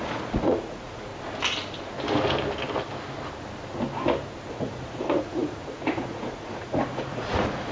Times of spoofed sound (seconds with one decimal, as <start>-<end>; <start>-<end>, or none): 0.0-1.1; 4.5-7.7